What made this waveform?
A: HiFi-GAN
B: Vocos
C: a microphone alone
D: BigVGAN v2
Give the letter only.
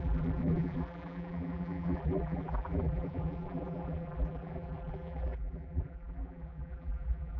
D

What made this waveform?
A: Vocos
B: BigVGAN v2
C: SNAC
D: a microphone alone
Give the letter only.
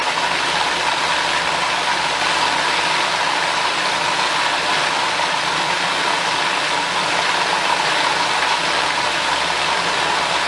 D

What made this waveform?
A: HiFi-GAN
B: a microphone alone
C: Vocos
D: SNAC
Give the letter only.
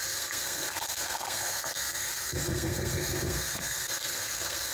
D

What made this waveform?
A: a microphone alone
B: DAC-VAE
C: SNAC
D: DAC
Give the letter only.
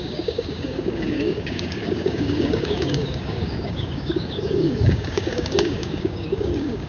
D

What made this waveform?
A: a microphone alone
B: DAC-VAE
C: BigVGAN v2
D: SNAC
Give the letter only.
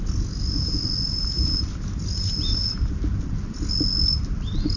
A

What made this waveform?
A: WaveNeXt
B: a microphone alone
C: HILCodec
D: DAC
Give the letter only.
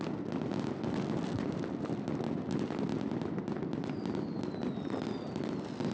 B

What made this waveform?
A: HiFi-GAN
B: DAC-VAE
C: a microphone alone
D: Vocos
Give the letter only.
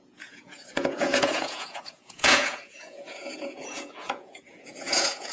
D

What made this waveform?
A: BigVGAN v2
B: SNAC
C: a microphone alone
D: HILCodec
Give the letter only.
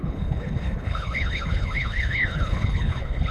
D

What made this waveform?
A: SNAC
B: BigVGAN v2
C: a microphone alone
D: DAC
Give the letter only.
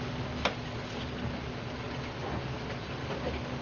C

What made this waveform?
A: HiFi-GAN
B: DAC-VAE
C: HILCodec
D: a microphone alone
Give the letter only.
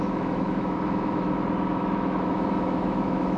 B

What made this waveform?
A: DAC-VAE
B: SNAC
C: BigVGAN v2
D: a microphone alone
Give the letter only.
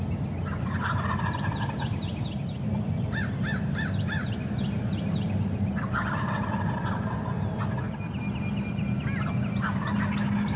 D